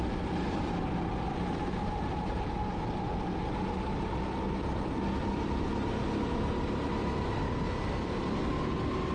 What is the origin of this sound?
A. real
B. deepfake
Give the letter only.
A